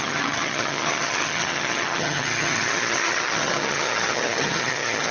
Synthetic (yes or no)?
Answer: yes